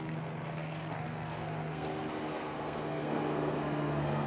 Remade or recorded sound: remade